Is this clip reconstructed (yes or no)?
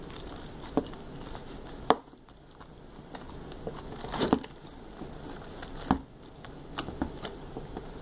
no